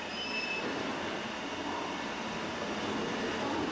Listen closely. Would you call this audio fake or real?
real